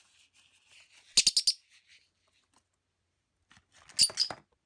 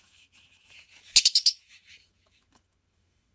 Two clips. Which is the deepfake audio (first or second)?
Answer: second